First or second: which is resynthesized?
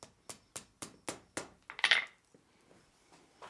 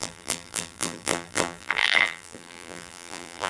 second